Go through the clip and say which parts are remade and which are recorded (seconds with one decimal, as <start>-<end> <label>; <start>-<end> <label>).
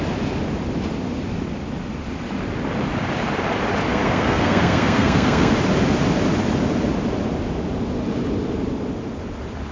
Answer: 0.0-3.9 recorded; 3.9-5.5 remade; 5.5-9.7 recorded